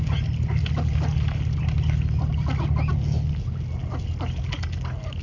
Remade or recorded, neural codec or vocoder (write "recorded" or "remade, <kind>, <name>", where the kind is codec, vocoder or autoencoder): recorded